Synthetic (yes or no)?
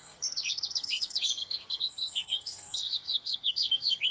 yes